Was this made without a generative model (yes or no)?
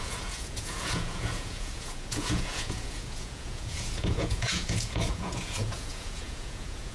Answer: no